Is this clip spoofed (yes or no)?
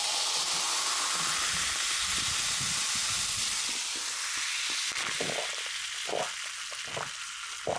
no